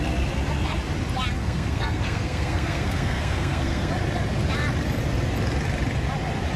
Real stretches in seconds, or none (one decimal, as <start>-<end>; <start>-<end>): 0.0-1.4; 3.9-6.6